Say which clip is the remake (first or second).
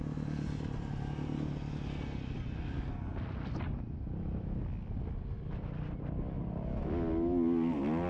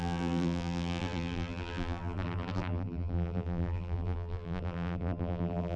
second